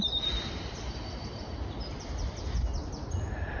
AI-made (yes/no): no